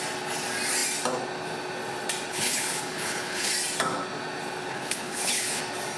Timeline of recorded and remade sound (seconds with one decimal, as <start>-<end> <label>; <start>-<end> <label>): 0.0-2.3 recorded; 2.3-3.5 remade; 3.5-4.7 recorded; 4.7-5.6 remade; 5.6-6.0 recorded